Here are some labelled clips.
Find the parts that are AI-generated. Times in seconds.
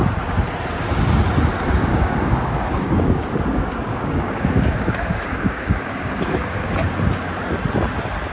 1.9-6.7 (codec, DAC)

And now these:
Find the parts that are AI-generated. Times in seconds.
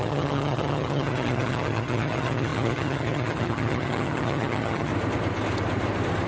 0.0-4.9 (vocoder, HiFi-GAN)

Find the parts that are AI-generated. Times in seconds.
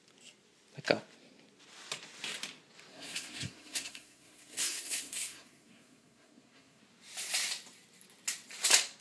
2.9-6.8 (codec, SNAC)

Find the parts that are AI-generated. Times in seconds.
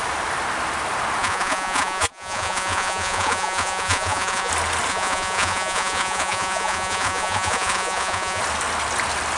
1.2-4.5 (vocoder, Vocos); 4.9-8.4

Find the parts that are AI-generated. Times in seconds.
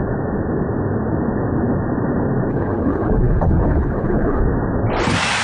2.5-4.4 (codec, HILCodec)